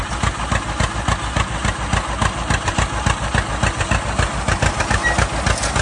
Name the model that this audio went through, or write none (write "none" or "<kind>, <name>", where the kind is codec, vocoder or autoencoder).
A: none